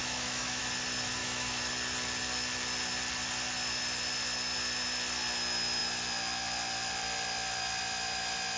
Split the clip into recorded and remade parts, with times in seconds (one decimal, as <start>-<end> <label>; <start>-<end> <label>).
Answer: 0.0-0.6 remade; 0.6-1.2 recorded; 1.2-1.7 remade; 1.7-8.6 recorded